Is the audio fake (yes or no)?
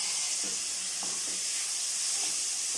no